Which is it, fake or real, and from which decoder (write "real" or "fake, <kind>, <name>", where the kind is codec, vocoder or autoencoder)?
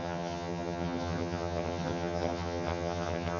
fake, vocoder, HiFi-GAN